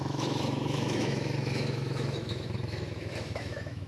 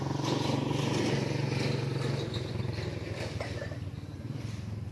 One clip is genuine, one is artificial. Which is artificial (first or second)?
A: first